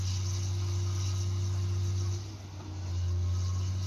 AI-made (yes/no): no